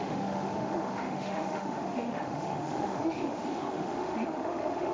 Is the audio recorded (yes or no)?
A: no